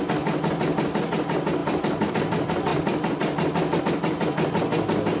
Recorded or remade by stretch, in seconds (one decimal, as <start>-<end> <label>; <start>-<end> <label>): 0.0-1.6 recorded; 1.6-2.1 remade; 2.1-2.7 recorded; 2.7-3.8 remade; 3.8-5.2 recorded